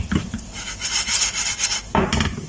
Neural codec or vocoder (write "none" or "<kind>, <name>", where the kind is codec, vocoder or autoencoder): none